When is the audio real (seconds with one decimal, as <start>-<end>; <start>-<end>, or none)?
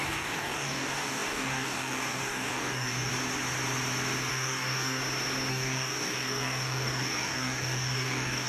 3.1-4.3; 5.0-5.5